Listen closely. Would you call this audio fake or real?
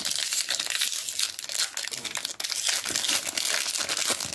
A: real